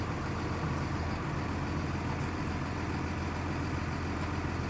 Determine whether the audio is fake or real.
real